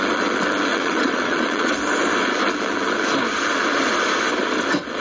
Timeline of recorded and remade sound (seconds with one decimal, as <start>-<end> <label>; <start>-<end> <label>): 0.0-0.7 recorded; 0.7-1.7 remade; 1.7-5.0 recorded